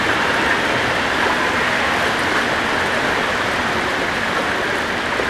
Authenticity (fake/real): real